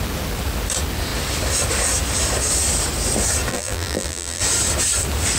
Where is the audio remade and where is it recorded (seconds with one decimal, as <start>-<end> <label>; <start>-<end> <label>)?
0.0-3.5 recorded; 3.5-4.4 remade; 4.4-5.4 recorded